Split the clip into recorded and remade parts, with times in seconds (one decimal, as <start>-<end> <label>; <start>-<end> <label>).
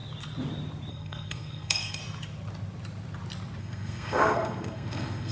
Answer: 0.0-0.9 recorded; 0.9-2.0 remade; 2.0-3.6 recorded; 3.6-5.3 remade